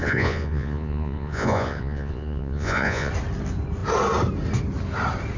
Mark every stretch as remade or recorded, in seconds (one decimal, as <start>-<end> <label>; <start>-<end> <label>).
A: 0.0-3.1 remade; 3.1-5.4 recorded